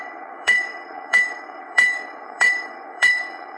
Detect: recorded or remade remade